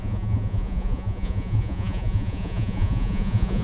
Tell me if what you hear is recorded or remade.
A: remade